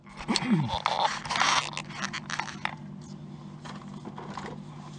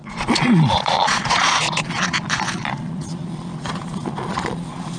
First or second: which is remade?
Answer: second